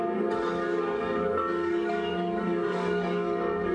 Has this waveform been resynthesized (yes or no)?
yes